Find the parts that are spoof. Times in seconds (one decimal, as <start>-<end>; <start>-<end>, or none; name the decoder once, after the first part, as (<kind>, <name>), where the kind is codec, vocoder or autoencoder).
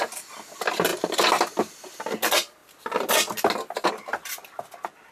none